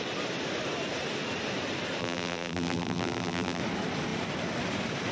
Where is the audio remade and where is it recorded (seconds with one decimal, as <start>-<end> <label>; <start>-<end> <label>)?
0.0-2.0 recorded; 2.0-3.6 remade; 3.6-5.1 recorded